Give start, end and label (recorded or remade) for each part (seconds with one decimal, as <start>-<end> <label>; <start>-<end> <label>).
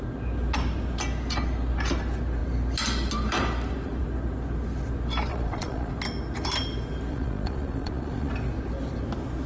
0.0-5.3 recorded; 5.3-5.9 remade; 5.9-7.1 recorded; 7.1-8.3 remade; 8.3-9.5 recorded